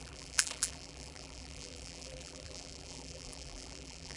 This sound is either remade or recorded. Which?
remade